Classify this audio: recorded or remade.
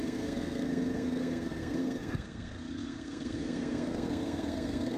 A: remade